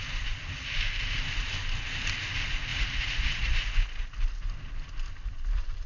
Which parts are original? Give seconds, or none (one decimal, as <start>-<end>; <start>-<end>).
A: 0.0-2.7; 3.5-5.9